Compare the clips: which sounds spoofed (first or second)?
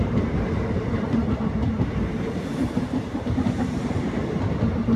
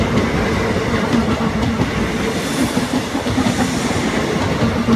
first